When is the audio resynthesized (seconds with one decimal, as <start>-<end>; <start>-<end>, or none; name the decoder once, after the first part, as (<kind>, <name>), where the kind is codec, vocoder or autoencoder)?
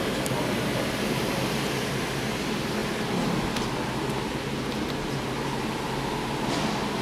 none